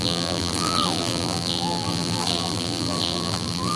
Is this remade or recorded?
remade